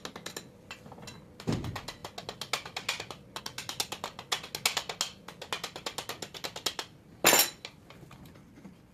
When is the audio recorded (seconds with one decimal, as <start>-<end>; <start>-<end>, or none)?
0.0-8.9

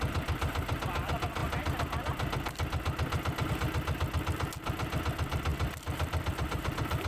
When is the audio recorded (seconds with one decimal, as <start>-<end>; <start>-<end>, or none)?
0.0-7.1